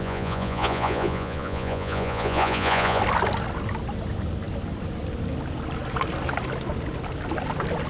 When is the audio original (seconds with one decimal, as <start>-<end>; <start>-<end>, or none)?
3.0-7.9